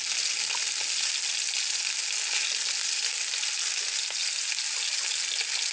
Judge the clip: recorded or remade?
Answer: recorded